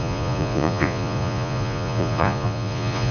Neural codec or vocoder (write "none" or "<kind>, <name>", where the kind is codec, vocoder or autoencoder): vocoder, Vocos